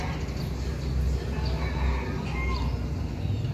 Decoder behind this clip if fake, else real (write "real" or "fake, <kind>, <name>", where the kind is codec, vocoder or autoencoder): real